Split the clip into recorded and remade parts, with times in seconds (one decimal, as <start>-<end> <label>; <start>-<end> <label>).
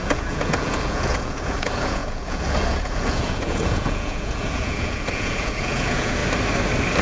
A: 0.0-6.2 remade; 6.2-7.0 recorded